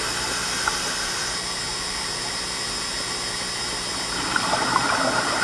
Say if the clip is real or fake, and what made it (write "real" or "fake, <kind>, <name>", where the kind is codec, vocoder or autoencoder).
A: fake, vocoder, BigVGAN v2